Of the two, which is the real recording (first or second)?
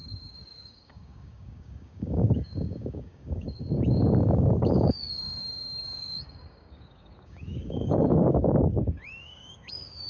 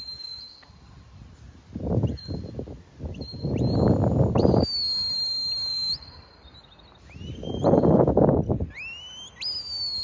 second